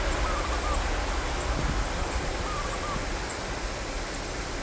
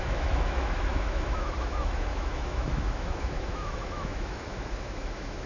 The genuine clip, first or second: first